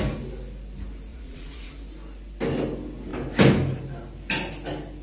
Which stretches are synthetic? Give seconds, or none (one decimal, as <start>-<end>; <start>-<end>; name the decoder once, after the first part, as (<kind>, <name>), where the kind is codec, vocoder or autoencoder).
1.1-1.7 (vocoder, Vocos)